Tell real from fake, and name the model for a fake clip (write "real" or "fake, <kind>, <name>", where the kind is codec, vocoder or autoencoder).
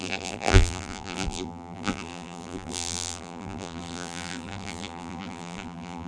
fake, vocoder, BigVGAN v2